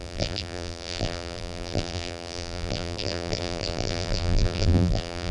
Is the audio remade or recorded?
remade